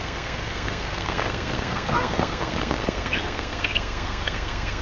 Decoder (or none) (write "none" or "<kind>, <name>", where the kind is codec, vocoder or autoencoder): codec, SNAC